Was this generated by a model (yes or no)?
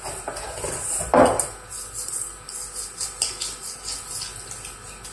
no